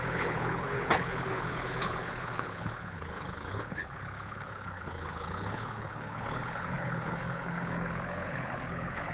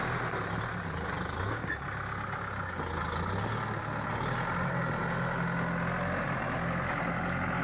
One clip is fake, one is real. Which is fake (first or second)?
first